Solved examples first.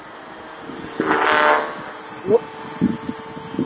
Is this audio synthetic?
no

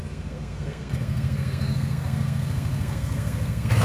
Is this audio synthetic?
yes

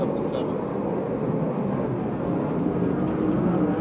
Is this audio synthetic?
no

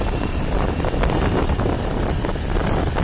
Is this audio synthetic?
no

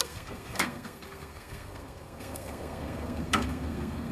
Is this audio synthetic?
yes